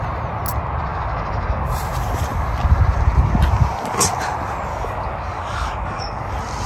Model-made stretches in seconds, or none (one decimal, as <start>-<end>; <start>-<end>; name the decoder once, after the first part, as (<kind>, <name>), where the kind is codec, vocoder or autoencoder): 0.9-1.7 (codec, DAC); 4.7-6.3